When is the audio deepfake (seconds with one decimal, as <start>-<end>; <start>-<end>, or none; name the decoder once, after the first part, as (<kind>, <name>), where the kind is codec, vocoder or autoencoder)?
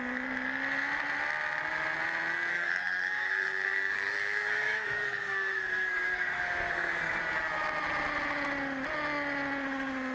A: 2.5-7.2 (codec, SNAC)